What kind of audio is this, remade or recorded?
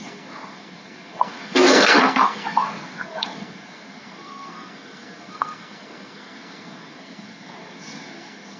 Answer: remade